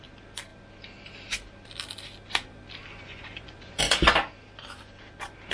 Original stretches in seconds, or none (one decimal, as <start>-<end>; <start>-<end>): 0.0-2.9; 3.8-5.5